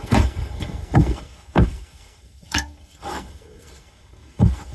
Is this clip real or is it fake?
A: fake